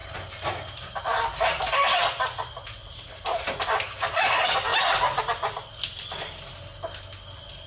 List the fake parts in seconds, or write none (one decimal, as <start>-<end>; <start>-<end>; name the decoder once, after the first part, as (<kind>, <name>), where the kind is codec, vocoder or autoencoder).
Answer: 0.0-7.7 (vocoder, BigVGAN v2)